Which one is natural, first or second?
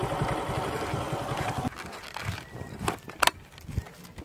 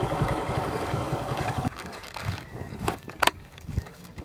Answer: first